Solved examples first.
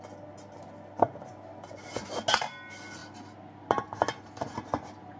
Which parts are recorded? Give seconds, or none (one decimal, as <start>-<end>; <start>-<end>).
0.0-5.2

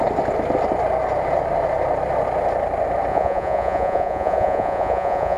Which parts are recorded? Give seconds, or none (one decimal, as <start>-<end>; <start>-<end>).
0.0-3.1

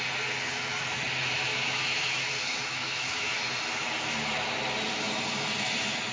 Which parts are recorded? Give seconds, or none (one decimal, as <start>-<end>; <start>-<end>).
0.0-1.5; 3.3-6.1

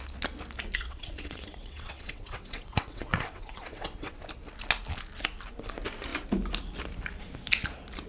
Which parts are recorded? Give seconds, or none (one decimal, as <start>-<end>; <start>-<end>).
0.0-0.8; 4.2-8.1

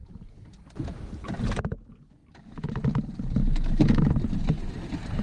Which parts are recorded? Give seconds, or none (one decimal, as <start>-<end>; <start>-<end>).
0.0-5.2

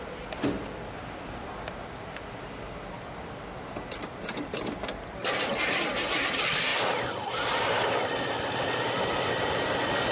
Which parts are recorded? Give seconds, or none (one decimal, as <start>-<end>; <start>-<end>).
0.0-10.1

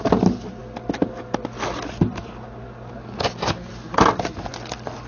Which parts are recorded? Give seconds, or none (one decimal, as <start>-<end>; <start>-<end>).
0.0-5.1